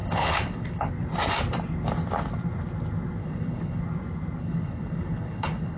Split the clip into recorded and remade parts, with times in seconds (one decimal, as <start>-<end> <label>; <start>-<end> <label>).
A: 0.0-0.9 remade; 0.9-3.2 recorded; 3.2-3.8 remade; 3.8-4.4 recorded; 4.4-5.8 remade